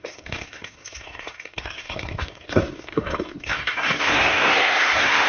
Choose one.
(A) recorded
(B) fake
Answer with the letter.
B